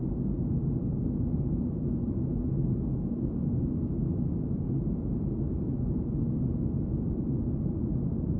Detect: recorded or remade recorded